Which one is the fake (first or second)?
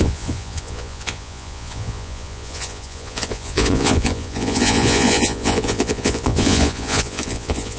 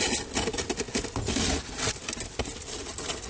first